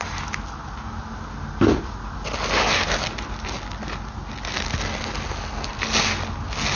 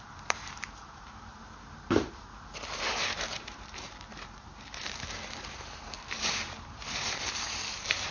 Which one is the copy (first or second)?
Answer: second